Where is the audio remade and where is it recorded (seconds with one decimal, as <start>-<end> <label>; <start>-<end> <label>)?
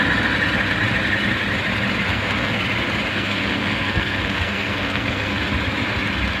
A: 0.0-2.1 recorded; 2.1-2.6 remade; 2.6-3.1 recorded; 3.1-5.4 remade; 5.4-6.4 recorded